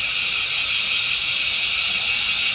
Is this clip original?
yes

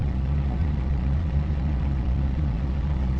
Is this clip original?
no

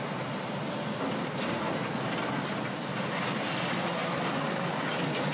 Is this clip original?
yes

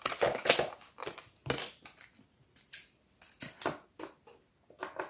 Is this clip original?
yes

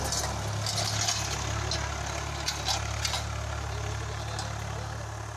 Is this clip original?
yes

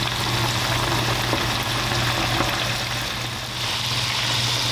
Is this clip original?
yes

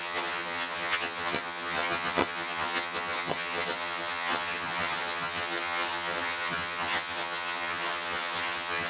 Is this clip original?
no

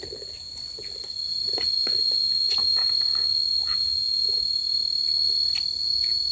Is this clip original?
yes